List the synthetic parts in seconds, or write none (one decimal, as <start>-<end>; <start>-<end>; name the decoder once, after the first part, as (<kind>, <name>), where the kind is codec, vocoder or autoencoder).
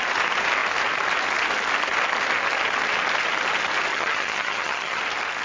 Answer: 3.9-5.0 (vocoder, HiFi-GAN)